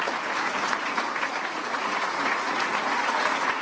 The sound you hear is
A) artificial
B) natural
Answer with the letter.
A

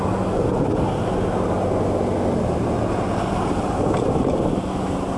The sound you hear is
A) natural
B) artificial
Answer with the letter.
A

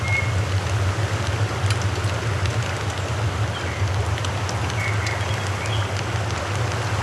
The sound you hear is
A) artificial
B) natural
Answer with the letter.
B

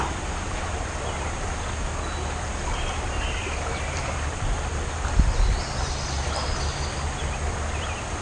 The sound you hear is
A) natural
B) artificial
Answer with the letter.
A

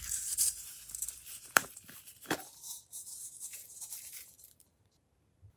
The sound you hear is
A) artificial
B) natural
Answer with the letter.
A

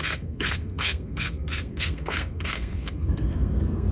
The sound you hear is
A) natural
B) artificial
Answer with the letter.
B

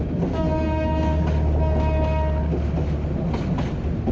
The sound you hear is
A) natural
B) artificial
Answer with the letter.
A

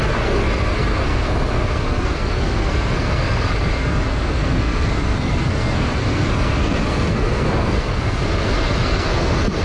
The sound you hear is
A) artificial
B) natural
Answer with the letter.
A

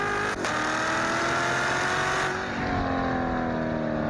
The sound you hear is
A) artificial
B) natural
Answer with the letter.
B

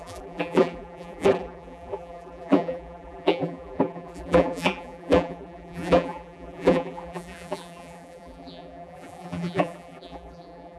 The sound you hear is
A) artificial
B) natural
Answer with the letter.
A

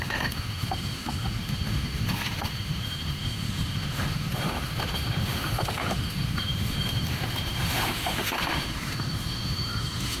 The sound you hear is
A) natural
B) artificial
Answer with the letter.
B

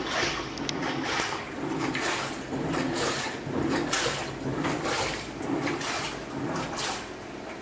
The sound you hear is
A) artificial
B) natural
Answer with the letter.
B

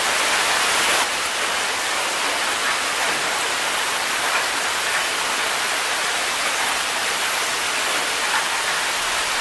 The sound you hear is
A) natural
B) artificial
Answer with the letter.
A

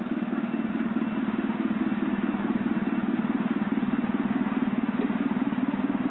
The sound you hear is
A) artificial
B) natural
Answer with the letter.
B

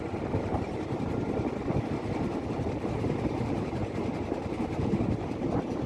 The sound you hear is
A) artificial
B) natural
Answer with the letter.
B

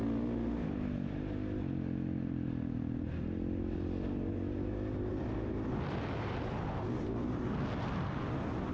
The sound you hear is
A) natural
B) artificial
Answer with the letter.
A